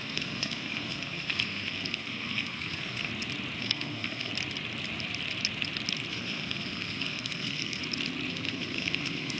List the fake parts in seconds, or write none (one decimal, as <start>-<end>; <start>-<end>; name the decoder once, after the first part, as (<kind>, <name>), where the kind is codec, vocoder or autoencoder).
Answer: 0.0-3.1 (codec, SNAC); 3.6-4.3; 6.1-7.8; 8.3-9.4